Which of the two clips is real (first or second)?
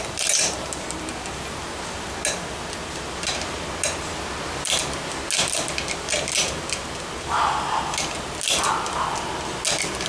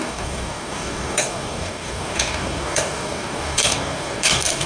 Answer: first